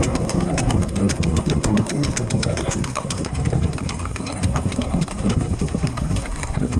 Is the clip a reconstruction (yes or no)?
yes